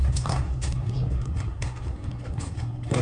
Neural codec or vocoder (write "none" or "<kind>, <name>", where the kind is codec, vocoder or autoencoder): codec, SNAC